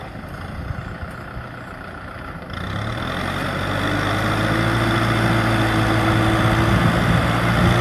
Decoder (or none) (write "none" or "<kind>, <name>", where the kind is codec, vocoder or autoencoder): none